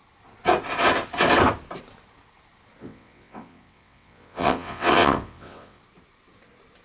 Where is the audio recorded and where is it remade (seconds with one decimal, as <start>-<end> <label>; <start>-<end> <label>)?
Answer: 0.0-2.8 recorded; 2.8-5.8 remade; 5.8-6.8 recorded